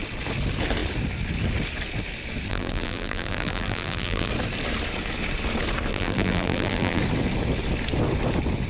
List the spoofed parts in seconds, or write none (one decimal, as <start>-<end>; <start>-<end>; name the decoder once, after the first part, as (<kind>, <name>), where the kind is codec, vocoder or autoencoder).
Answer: 2.5-4.3 (vocoder, BigVGAN v2); 5.9-7.0